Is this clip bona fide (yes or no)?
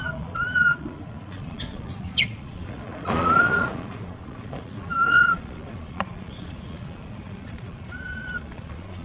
no